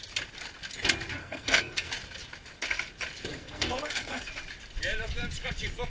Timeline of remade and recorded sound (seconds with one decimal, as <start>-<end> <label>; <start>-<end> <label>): 0.0-1.2 recorded; 1.2-1.9 remade; 1.9-3.3 recorded; 3.3-4.3 remade; 4.3-5.9 recorded